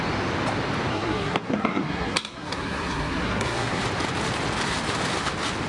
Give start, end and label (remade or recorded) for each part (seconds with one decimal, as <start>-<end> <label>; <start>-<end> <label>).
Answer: 0.0-0.9 recorded; 0.9-3.8 remade; 3.8-5.7 recorded